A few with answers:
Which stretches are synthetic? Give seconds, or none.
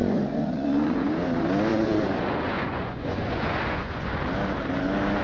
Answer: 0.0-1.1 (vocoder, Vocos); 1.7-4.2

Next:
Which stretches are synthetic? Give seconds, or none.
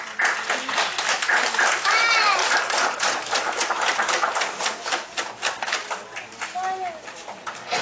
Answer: 2.4-3.6 (vocoder, BigVGAN v2)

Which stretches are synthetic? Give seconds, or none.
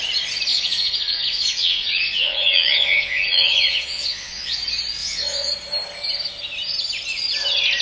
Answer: 0.5-4.6 (vocoder, Vocos); 5.0-5.5